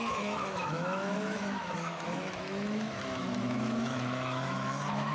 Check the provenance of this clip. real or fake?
fake